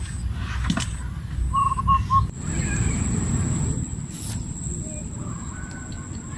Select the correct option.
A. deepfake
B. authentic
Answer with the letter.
B